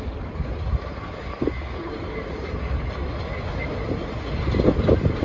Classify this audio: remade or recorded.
recorded